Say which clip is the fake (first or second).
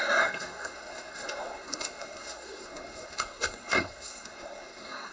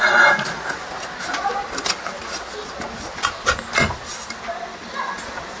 first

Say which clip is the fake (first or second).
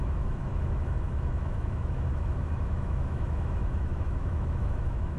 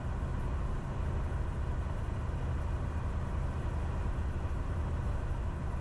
first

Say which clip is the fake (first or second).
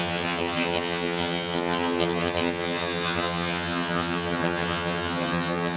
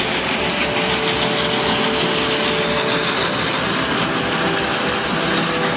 first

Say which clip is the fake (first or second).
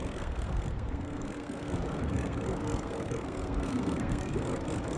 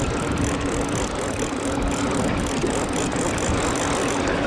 first